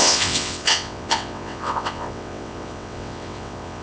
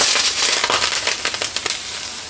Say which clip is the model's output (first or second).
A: first